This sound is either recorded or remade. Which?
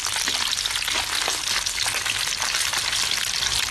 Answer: recorded